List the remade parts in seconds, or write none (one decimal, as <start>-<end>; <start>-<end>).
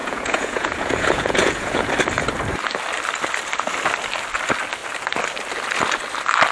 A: 0.0-1.9